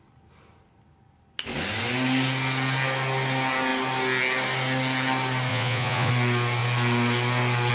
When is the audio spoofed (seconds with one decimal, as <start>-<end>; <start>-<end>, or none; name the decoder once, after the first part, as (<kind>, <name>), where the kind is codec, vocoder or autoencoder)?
5.5-6.1 (vocoder, Vocos)

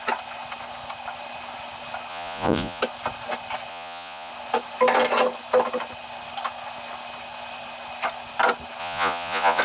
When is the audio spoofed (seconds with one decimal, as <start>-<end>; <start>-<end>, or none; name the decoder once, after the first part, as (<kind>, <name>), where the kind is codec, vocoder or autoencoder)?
2.1-2.8 (vocoder, Vocos); 3.7-4.3; 8.8-9.6